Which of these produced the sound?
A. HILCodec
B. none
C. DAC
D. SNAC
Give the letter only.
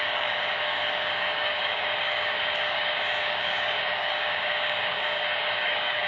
C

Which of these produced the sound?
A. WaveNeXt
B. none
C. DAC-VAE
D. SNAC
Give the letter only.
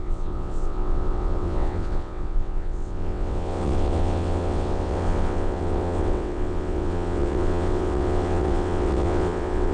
A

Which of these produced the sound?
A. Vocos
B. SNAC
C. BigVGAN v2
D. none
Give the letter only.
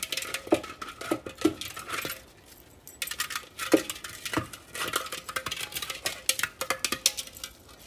D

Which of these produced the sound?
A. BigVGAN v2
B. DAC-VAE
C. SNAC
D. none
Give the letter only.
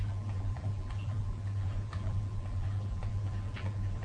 A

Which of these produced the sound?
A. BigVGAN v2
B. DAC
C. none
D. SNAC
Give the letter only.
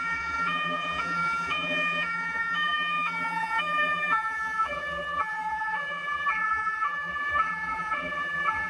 A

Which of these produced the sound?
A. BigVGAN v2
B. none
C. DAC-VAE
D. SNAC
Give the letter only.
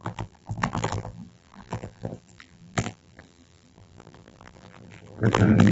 A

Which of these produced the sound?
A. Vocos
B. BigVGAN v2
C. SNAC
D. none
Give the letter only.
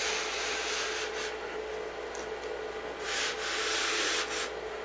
D